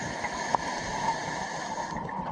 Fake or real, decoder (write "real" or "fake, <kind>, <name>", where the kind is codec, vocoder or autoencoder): real